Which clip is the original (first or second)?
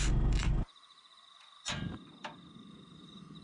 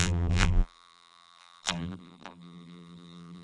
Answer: first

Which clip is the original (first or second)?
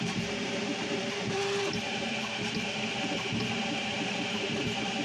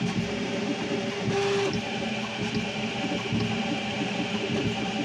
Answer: second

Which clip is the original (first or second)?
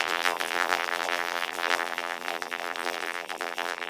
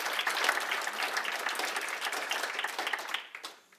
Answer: second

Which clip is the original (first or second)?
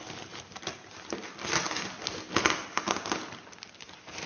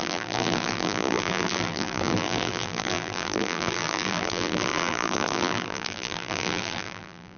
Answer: first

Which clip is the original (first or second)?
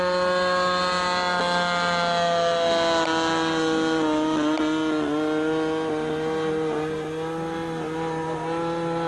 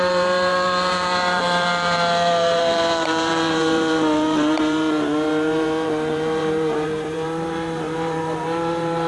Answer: first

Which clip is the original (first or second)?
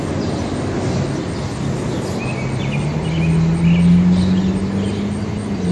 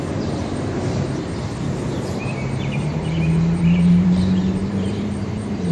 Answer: first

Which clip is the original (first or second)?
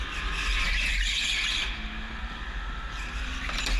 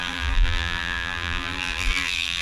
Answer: first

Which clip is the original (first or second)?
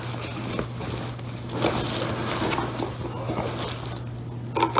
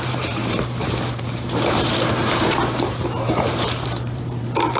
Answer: first